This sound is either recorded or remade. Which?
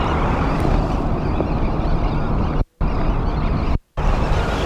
recorded